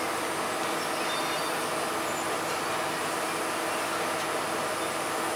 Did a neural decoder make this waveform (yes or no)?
no